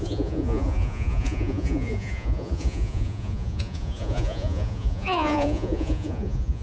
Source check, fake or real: fake